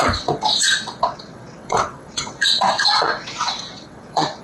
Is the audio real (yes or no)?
no